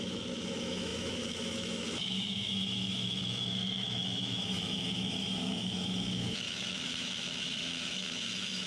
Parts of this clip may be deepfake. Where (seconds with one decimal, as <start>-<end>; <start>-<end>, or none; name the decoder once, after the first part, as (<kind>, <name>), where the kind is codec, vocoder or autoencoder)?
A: 0.0-8.7 (autoencoder, DAC-VAE)